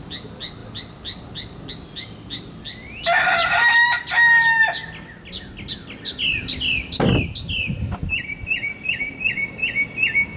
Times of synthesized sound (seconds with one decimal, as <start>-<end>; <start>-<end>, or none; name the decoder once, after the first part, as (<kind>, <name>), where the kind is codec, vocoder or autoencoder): none